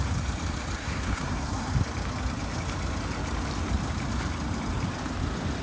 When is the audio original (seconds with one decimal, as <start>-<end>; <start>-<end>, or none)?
0.0-0.8; 1.7-5.6